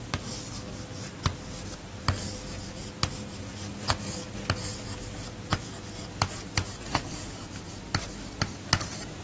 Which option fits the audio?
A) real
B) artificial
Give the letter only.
A